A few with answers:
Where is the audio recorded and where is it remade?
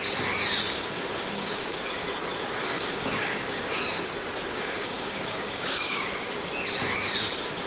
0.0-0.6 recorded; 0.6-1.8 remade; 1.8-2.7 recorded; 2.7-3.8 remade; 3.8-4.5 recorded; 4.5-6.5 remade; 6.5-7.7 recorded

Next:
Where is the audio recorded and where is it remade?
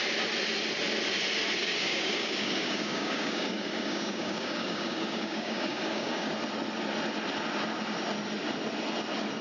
0.0-1.6 recorded; 1.6-6.3 remade; 6.3-9.4 recorded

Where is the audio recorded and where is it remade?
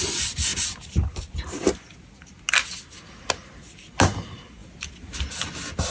0.0-5.9 recorded